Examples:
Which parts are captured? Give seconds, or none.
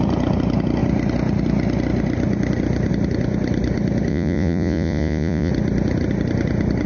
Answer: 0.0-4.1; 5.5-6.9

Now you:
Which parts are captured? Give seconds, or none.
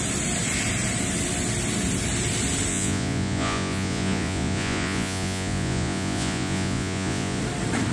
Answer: 0.0-2.7; 7.4-7.9